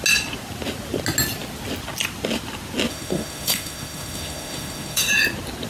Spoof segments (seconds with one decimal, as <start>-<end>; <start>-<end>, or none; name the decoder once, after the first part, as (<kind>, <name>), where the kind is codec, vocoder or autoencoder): 2.9-5.1 (autoencoder, DAC-VAE)